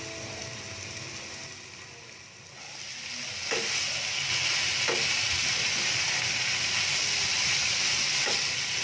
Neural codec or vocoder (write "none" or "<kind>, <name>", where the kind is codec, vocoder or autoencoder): none